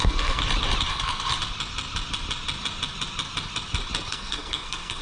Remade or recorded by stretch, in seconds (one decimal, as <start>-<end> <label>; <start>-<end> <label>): 0.0-0.4 remade; 0.4-0.9 recorded; 0.9-1.3 remade; 1.3-4.1 recorded; 4.1-5.0 remade